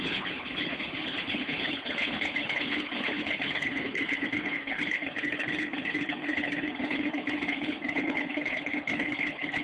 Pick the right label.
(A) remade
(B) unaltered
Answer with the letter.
A